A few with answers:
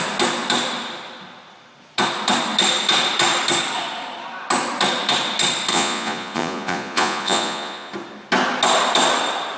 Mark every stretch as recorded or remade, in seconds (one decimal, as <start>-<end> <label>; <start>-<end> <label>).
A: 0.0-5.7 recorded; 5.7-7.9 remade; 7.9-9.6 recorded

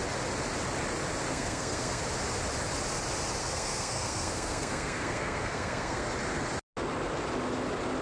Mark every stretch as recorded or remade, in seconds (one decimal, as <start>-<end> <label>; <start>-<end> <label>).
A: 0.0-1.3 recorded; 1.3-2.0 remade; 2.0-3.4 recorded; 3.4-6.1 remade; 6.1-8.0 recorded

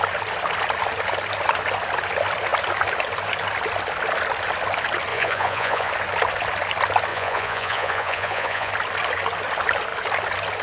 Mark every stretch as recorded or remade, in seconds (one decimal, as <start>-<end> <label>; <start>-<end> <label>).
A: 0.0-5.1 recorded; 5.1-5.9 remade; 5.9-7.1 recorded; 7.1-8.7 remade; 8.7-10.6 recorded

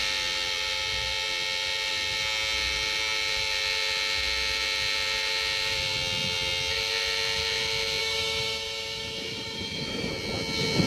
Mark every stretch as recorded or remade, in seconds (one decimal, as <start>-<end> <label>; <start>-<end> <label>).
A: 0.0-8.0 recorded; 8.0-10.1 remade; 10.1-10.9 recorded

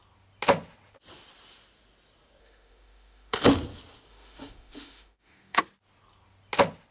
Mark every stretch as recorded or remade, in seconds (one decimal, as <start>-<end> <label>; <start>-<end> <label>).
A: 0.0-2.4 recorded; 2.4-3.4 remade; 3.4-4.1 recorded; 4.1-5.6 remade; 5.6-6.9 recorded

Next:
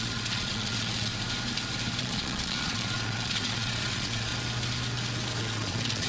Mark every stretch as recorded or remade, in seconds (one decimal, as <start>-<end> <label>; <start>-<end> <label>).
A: 0.0-1.1 remade; 1.1-2.0 recorded; 2.0-4.3 remade; 4.3-5.4 recorded; 5.4-6.1 remade

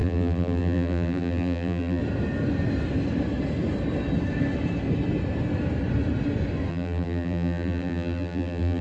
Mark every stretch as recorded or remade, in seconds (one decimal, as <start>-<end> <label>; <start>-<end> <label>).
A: 0.0-2.0 remade; 2.0-6.7 recorded; 6.7-8.8 remade

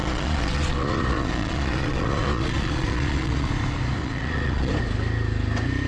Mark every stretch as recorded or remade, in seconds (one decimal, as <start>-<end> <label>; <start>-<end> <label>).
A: 0.0-3.5 remade; 3.5-4.0 recorded; 4.0-4.7 remade; 4.7-5.9 recorded